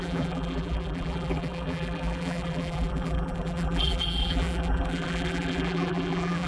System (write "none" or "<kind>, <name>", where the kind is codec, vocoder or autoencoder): vocoder, BigVGAN v2